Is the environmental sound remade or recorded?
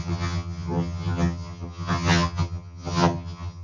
remade